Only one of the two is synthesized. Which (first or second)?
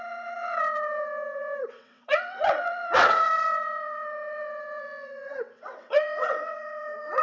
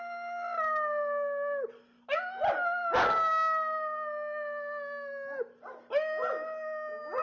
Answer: first